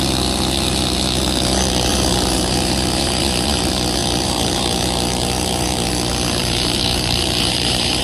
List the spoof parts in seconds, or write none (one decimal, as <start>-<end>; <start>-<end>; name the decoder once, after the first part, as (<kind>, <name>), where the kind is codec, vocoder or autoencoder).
1.9-3.2 (vocoder, BigVGAN v2); 4.0-5.9; 6.4-8.0